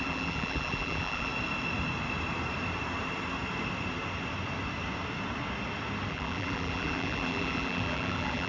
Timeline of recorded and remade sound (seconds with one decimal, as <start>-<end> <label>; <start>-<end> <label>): 0.0-1.3 remade; 1.3-6.1 recorded; 6.1-8.5 remade